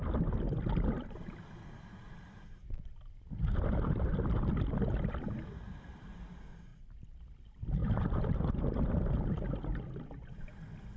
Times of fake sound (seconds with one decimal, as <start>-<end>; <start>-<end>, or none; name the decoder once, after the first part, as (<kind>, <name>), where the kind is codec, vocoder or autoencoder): 6.7-7.2 (vocoder, BigVGAN v2); 7.8-8.8